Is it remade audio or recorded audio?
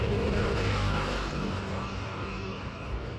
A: remade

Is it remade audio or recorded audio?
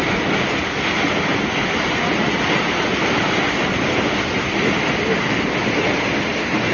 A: recorded